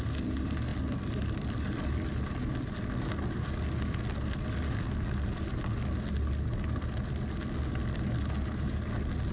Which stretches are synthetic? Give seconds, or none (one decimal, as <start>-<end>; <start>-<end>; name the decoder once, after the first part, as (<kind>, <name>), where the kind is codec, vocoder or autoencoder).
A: none